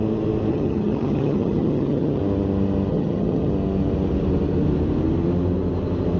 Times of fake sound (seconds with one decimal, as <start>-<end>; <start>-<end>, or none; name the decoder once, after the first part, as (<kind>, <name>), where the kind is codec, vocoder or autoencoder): 0.5-2.2 (vocoder, HiFi-GAN); 2.9-3.5